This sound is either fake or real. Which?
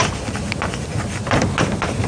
real